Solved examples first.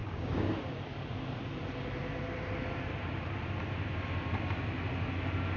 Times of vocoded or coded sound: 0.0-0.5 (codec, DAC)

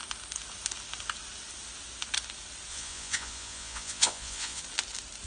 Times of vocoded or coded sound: 2.7-4.6 (vocoder, Vocos)

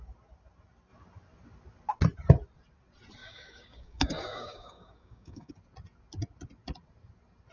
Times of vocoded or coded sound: 3.2-5.5 (codec, DAC)

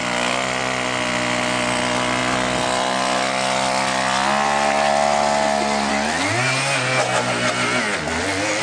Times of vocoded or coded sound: none

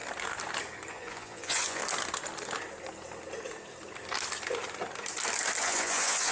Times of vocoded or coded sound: 0.9-1.8 (vocoder, Vocos); 5.6-6.3